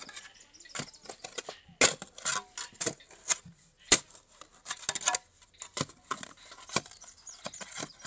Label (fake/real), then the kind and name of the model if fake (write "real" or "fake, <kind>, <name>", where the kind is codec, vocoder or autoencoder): real